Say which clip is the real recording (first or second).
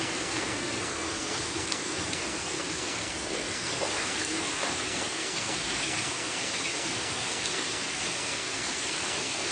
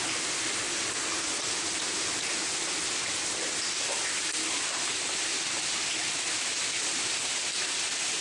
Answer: second